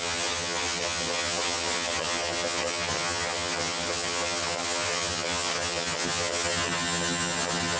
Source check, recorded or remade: remade